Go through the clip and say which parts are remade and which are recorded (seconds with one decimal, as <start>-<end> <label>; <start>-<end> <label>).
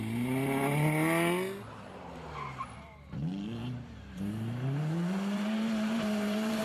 0.0-3.6 recorded; 3.6-6.6 remade